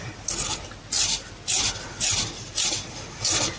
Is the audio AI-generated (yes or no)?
no